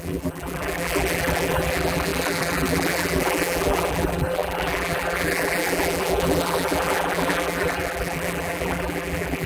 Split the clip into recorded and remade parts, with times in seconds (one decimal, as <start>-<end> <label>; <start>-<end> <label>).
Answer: 0.0-9.5 remade